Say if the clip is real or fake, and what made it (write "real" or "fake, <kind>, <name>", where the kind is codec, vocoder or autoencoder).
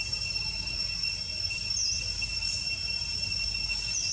real